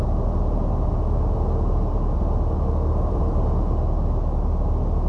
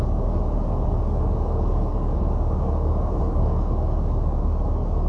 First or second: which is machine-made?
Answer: second